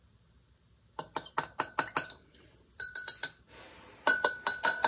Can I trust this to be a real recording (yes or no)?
yes